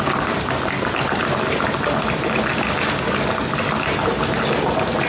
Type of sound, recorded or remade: recorded